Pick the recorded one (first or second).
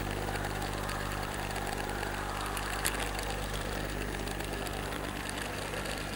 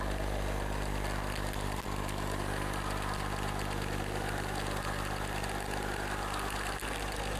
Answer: second